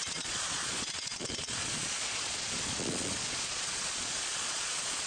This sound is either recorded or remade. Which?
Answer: remade